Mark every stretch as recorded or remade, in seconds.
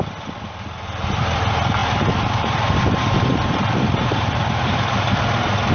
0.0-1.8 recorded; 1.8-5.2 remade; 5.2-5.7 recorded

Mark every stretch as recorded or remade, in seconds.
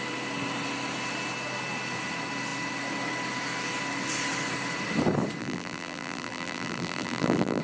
0.0-5.4 recorded; 5.4-7.6 remade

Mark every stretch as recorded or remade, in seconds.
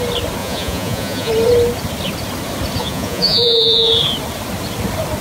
0.0-0.4 recorded; 0.4-1.3 remade; 1.3-2.8 recorded; 2.8-3.9 remade; 3.9-5.2 recorded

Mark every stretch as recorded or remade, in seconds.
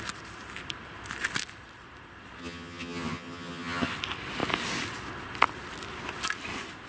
0.0-2.4 recorded; 2.4-3.9 remade; 3.9-6.9 recorded